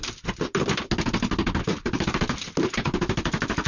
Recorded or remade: recorded